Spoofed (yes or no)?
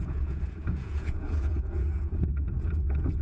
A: yes